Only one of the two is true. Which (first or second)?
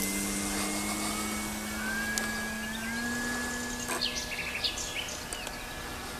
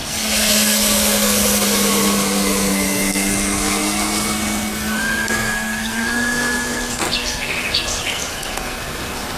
first